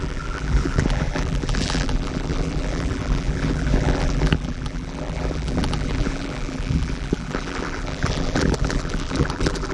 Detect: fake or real fake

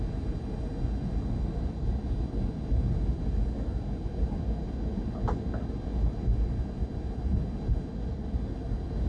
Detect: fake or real real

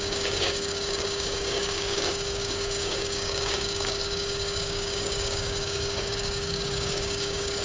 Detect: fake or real fake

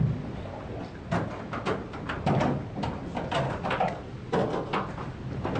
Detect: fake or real real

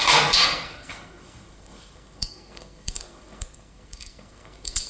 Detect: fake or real fake